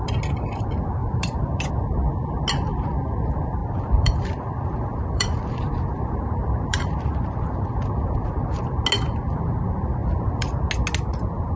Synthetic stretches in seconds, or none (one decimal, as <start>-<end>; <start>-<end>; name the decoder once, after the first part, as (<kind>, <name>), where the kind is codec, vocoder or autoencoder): 1.0-1.7 (vocoder, BigVGAN v2); 3.6-8.8; 10.0-10.7